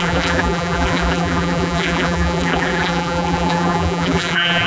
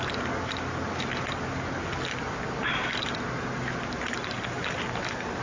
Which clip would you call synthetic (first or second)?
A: first